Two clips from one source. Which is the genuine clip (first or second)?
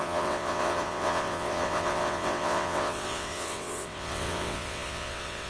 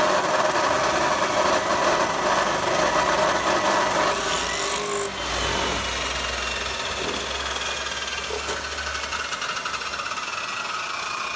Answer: second